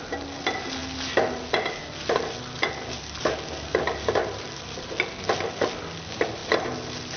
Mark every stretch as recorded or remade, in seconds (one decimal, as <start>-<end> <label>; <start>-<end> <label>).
0.0-7.2 recorded

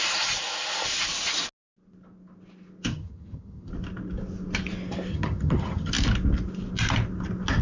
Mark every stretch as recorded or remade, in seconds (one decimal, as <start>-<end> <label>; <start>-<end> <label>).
0.0-2.9 recorded; 2.9-3.7 remade; 3.7-5.1 recorded; 5.1-5.9 remade; 5.9-7.6 recorded

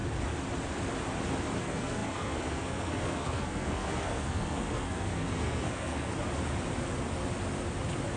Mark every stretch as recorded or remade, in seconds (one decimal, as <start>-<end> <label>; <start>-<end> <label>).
0.0-1.6 recorded; 1.6-6.1 remade; 6.1-8.2 recorded

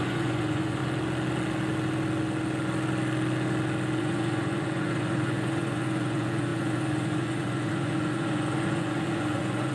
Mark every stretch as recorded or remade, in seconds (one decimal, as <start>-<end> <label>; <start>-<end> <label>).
0.0-0.8 remade; 0.8-4.0 recorded; 4.0-9.7 remade

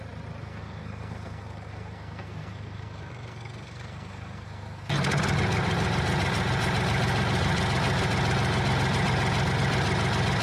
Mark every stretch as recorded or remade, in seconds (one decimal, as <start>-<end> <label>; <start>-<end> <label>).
0.0-0.4 recorded; 0.4-4.9 remade; 4.9-10.4 recorded

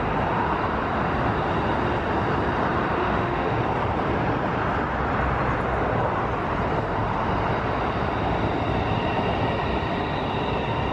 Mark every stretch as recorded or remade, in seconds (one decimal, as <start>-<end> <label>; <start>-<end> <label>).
0.0-3.0 recorded; 3.0-3.6 remade; 3.6-10.9 recorded

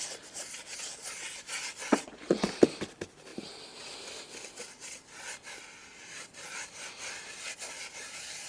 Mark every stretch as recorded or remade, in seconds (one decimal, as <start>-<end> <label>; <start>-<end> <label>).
0.0-1.9 recorded; 1.9-2.5 remade; 2.5-8.5 recorded